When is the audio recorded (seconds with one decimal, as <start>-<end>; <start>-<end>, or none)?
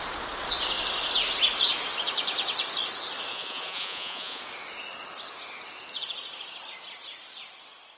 0.0-3.3; 4.4-8.0